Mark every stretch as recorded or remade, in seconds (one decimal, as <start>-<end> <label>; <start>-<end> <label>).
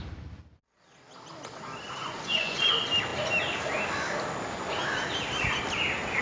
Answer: 0.0-2.0 recorded; 2.0-2.7 remade; 2.7-6.2 recorded